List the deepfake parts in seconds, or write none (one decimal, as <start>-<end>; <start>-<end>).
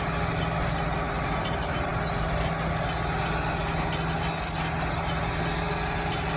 none